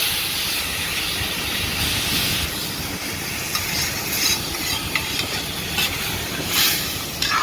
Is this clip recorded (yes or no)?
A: no